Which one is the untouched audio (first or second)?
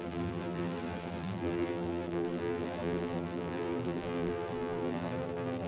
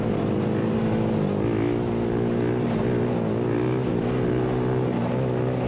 second